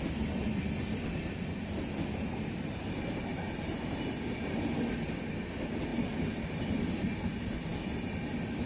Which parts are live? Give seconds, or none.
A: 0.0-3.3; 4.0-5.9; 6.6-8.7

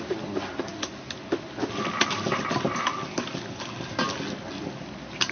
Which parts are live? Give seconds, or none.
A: 0.0-5.3

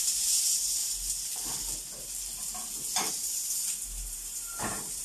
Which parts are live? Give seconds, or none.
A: 0.8-3.1